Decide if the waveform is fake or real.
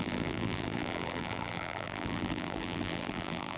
fake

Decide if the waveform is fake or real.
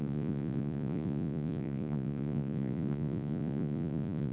fake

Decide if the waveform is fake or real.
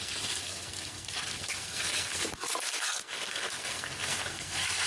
fake